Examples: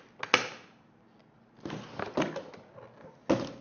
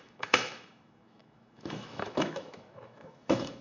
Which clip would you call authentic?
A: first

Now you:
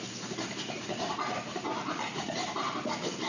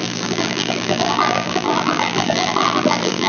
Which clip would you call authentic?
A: first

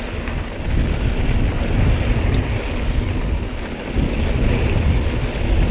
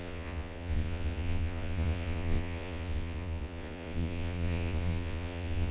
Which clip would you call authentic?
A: first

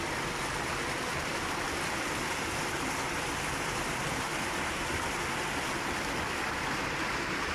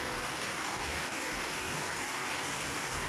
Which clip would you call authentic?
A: first